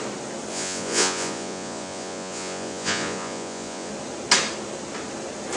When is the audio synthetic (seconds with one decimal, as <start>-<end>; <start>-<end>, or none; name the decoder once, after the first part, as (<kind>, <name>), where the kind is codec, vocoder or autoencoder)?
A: 0.5-3.9 (vocoder, Vocos)